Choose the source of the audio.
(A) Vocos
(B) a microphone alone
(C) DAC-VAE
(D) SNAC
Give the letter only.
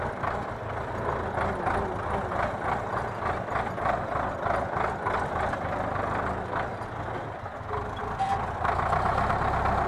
B